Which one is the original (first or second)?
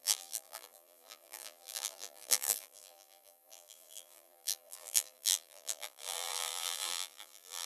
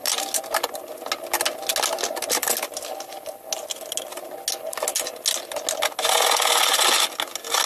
second